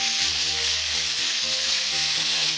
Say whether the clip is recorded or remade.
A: remade